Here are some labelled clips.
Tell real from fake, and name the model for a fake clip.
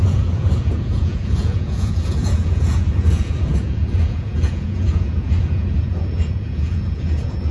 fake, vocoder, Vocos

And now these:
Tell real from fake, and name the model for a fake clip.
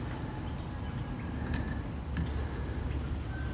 real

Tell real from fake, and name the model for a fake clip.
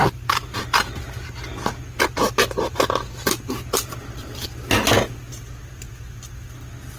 real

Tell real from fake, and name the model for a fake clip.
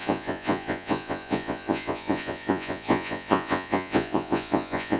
fake, vocoder, Vocos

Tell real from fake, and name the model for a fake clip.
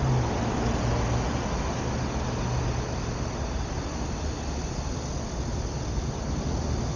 real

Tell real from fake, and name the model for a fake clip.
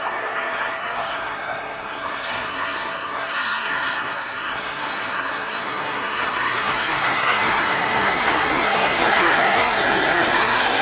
fake, codec, SNAC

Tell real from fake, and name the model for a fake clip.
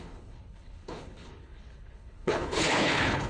fake, codec, HILCodec